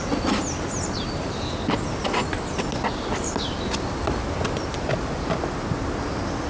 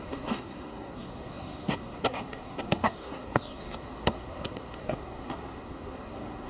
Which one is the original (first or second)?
first